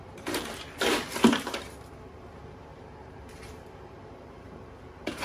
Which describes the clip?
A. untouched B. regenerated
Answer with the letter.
B